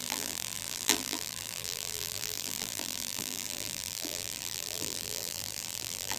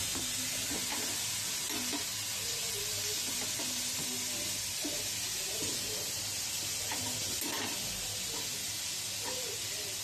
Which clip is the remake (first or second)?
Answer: first